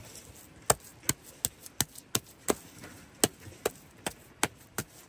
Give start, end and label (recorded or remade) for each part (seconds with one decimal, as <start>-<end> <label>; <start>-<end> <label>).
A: 0.0-5.1 recorded